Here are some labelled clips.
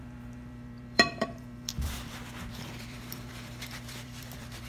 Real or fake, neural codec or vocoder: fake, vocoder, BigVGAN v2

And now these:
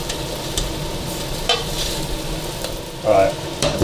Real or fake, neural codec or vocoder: fake, vocoder, BigVGAN v2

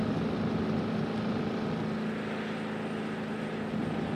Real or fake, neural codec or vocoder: real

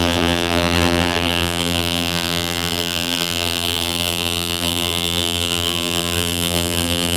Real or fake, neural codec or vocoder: fake, vocoder, BigVGAN v2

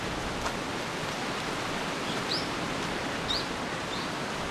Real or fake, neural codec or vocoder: real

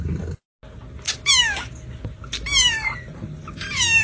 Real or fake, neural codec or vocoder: real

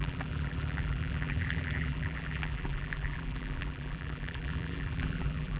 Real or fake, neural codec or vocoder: fake, vocoder, BigVGAN v2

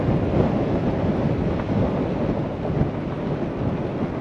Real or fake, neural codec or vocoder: real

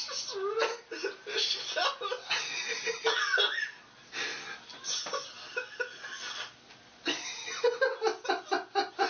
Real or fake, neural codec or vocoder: real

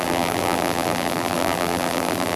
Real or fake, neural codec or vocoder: fake, vocoder, BigVGAN v2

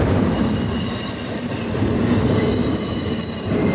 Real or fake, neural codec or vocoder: fake, vocoder, BigVGAN v2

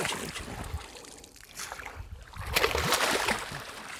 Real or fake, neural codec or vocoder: real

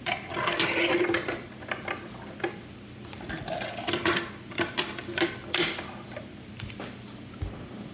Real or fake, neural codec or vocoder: fake, vocoder, BigVGAN v2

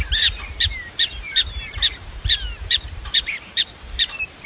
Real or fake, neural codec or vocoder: fake, vocoder, BigVGAN v2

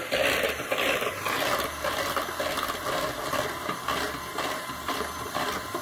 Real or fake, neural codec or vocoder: fake, vocoder, BigVGAN v2